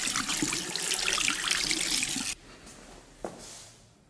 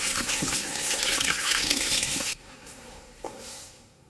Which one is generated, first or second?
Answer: second